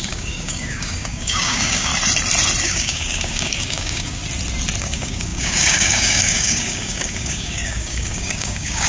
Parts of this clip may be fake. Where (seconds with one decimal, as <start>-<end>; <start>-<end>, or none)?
0.0-1.9; 2.6-4.2; 4.8-8.9

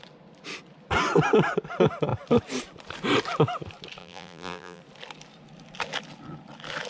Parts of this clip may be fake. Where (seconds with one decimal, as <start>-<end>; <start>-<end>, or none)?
4.0-4.8

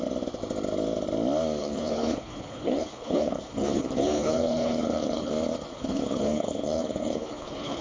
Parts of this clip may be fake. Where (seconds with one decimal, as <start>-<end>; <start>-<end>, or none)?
1.6-5.3; 5.7-7.8